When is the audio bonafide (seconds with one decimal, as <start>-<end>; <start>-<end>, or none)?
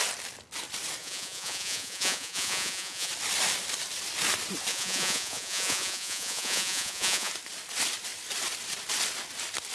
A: 0.0-1.0; 3.1-4.7; 7.3-9.7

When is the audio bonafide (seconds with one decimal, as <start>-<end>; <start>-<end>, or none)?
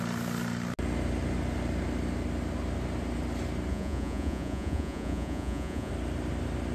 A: 0.0-3.7; 5.9-6.7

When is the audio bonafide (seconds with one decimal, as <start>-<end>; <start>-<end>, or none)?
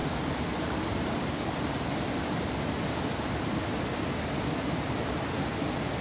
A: 0.0-6.0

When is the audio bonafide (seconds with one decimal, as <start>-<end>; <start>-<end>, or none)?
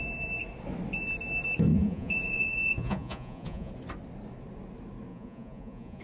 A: 0.0-1.7; 3.7-5.1